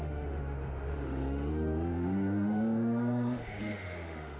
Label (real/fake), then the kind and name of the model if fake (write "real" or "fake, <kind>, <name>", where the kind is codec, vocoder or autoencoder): fake, autoencoder, DAC-VAE